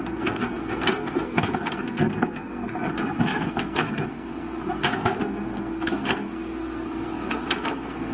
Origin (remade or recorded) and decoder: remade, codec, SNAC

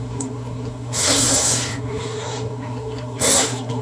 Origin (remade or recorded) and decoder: remade, codec, SNAC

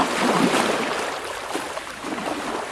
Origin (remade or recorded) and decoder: recorded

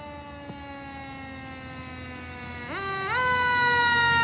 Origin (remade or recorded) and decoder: recorded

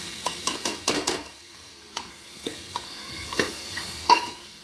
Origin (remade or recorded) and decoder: remade, codec, SNAC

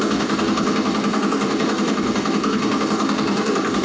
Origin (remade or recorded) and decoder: remade, codec, DAC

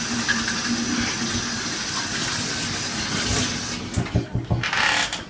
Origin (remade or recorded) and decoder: recorded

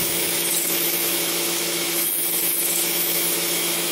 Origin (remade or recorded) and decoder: remade, autoencoder, DAC-VAE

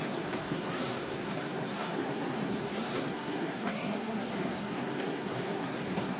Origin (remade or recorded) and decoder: remade, codec, SNAC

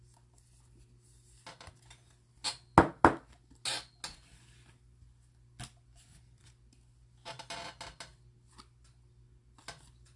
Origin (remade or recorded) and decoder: recorded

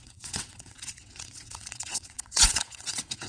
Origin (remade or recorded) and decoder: remade, vocoder, WaveNeXt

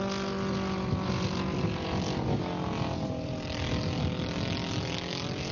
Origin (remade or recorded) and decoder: recorded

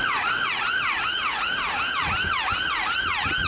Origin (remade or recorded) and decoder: remade, vocoder, Vocos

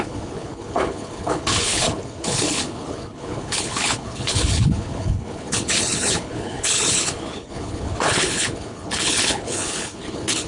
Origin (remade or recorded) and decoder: remade, codec, HILCodec